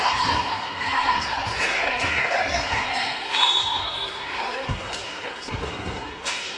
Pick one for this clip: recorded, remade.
remade